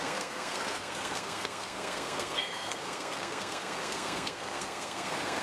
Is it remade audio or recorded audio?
remade